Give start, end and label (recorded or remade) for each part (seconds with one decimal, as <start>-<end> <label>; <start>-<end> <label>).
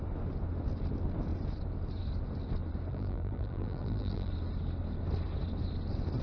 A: 0.0-2.9 recorded; 2.9-4.3 remade; 4.3-6.2 recorded